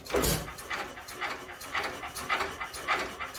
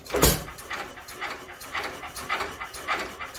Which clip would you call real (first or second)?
first